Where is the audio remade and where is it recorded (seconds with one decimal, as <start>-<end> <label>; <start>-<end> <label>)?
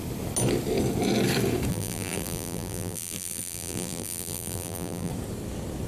0.0-1.7 recorded; 1.7-5.1 remade; 5.1-5.9 recorded